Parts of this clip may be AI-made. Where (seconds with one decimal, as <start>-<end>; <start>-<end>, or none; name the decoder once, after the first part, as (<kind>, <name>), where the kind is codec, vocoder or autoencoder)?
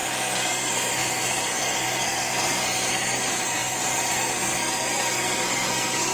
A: 0.0-6.1 (codec, SNAC)